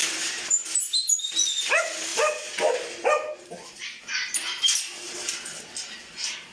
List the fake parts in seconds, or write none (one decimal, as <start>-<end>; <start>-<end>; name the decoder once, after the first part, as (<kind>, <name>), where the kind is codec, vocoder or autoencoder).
none